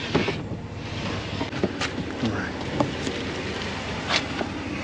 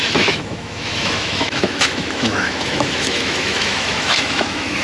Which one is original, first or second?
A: first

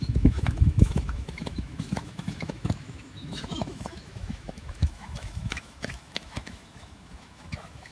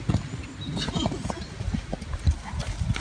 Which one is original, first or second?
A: second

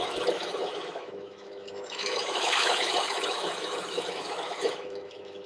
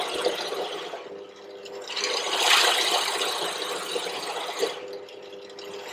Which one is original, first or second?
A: second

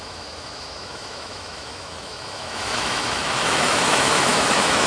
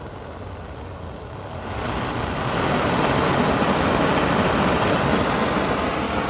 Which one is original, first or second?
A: second